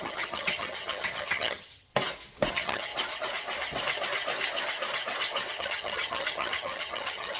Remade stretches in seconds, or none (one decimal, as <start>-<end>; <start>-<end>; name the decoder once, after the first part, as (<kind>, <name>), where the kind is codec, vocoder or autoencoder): 0.0-1.9 (vocoder, HiFi-GAN); 2.5-2.9; 5.6-7.4